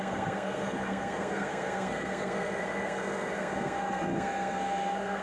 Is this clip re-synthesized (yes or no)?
yes